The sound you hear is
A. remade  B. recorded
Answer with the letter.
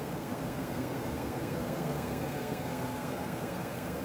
A